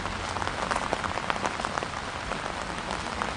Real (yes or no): yes